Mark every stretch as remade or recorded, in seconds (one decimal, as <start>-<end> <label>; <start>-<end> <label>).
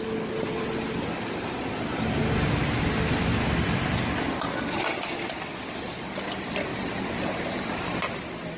0.0-8.6 recorded